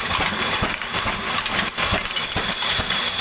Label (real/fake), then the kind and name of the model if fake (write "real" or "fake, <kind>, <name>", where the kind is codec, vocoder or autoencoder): real